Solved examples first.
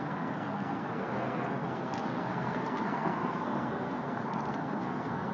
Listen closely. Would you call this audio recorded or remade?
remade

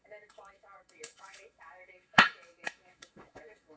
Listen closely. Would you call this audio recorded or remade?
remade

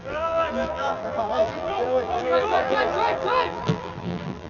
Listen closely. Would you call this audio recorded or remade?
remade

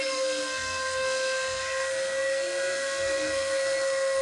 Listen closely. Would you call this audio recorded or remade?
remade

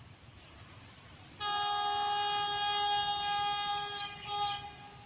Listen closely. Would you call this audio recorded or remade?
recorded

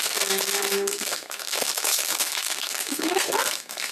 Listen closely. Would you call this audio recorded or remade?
remade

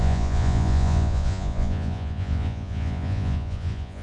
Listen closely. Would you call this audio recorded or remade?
remade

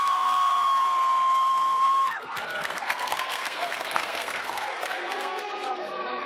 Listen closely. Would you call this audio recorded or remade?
remade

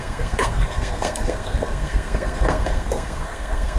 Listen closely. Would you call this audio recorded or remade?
remade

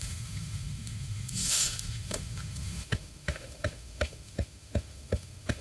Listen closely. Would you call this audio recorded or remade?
remade